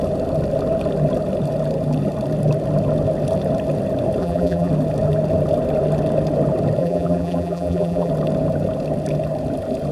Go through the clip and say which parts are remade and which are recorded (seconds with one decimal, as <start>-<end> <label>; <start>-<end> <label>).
0.0-4.2 recorded; 4.2-4.7 remade; 4.7-6.8 recorded; 6.8-8.1 remade; 8.1-9.9 recorded